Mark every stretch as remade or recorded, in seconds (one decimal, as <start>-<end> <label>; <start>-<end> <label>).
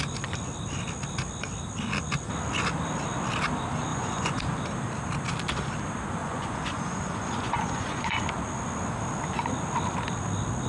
0.0-3.9 recorded; 3.9-4.4 remade; 4.4-6.2 recorded; 6.2-8.2 remade; 8.2-10.7 recorded